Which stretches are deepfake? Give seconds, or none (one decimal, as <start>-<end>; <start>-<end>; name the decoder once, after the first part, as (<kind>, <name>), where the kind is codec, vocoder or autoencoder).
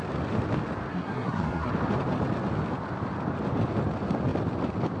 0.9-1.7 (codec, SNAC)